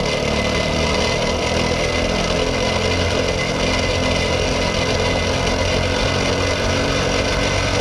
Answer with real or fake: real